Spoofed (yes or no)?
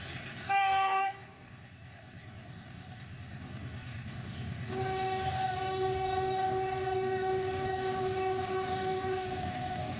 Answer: yes